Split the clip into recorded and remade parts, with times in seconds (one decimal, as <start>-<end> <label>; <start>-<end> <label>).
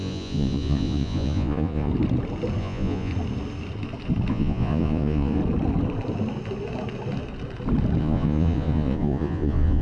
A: 0.0-1.9 remade; 1.9-2.6 recorded; 2.6-3.1 remade; 3.1-4.3 recorded; 4.3-5.4 remade; 5.4-8.0 recorded; 8.0-9.8 remade